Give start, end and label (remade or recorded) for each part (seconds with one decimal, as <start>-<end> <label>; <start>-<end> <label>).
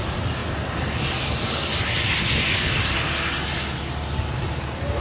0.0-5.0 recorded